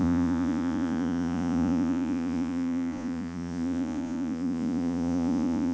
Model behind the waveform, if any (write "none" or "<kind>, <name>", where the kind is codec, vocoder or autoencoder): vocoder, Vocos